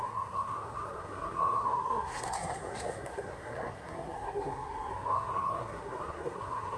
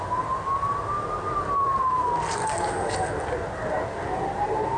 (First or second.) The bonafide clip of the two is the second